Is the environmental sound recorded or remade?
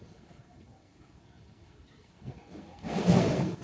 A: remade